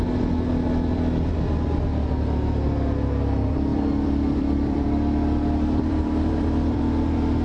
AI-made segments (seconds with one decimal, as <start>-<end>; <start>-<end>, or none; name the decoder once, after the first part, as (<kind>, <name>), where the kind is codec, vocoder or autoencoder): 3.7-6.8 (vocoder, BigVGAN v2)